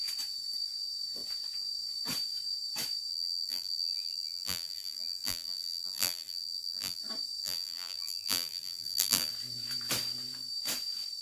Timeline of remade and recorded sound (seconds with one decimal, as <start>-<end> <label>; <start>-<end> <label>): 0.0-3.1 recorded; 3.1-7.0 remade; 7.0-7.4 recorded; 7.4-9.3 remade; 9.3-11.2 recorded